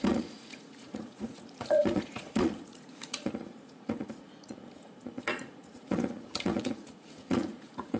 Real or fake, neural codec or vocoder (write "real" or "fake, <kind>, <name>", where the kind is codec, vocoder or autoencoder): fake, vocoder, Vocos